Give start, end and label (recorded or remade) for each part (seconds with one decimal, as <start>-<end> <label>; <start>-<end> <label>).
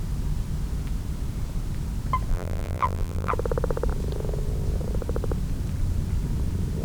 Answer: 0.0-2.3 recorded; 2.3-3.3 remade; 3.3-6.8 recorded